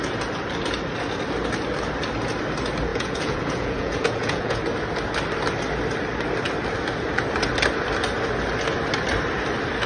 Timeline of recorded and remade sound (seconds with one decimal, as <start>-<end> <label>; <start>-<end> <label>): 0.0-2.9 recorded; 2.9-4.6 remade; 4.6-9.9 recorded